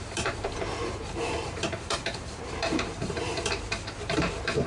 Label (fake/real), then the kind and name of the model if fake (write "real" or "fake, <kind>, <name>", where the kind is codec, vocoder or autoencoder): fake, vocoder, BigVGAN v2